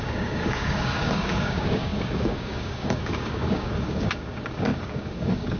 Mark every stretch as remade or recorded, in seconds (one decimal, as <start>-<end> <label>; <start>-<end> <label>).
0.0-5.6 remade